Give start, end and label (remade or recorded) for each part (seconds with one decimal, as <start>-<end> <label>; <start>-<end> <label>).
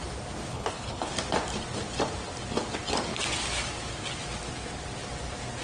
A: 0.0-0.5 recorded; 0.5-1.1 remade; 1.1-5.6 recorded